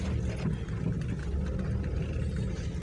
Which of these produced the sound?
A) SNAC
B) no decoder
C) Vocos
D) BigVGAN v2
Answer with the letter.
B